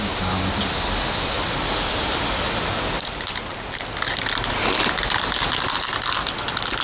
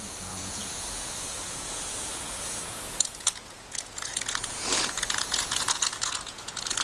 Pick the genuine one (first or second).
first